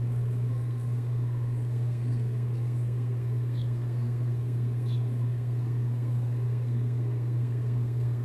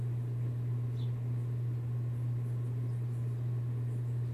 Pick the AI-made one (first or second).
first